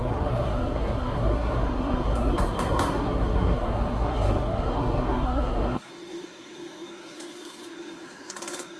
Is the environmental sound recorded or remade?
remade